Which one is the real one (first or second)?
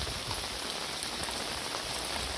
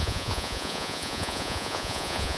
first